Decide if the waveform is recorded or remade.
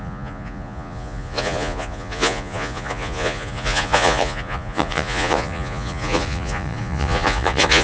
remade